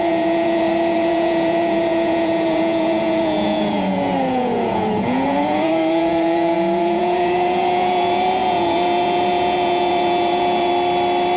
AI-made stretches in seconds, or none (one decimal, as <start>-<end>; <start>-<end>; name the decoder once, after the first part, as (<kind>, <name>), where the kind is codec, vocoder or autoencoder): 0.0-10.7 (vocoder, Vocos)